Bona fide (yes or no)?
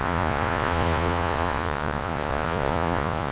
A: no